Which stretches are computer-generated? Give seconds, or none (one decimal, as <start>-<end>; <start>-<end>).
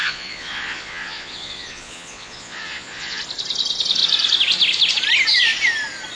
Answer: 0.0-3.2